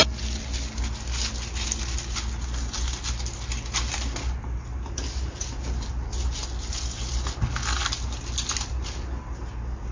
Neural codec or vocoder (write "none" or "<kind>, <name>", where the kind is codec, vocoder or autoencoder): none